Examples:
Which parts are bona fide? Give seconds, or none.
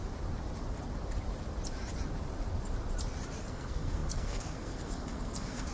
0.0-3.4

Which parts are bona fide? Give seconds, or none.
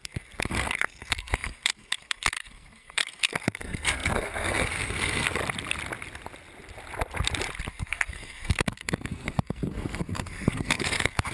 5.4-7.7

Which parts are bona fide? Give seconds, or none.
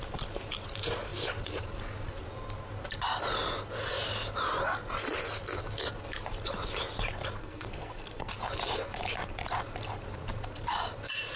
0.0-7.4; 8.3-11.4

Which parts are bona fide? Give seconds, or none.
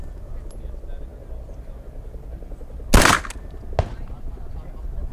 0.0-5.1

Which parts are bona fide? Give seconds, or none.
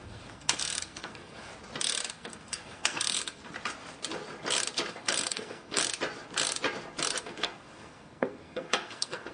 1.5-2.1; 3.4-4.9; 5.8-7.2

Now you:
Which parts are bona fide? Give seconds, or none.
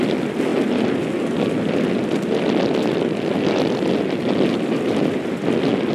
0.0-5.9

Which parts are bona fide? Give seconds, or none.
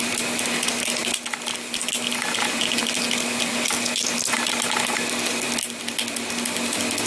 0.0-7.1